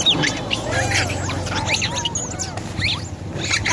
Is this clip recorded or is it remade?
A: recorded